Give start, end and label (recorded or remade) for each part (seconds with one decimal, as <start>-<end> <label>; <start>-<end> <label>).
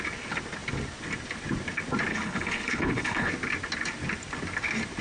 0.0-2.1 recorded; 2.1-3.3 remade; 3.3-5.0 recorded